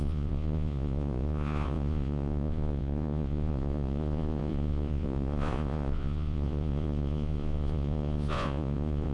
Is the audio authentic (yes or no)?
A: no